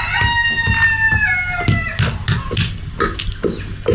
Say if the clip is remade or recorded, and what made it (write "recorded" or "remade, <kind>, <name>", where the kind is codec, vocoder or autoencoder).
recorded